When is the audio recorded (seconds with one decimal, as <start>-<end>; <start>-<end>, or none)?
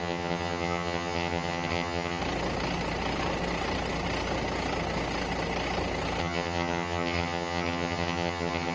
2.2-6.2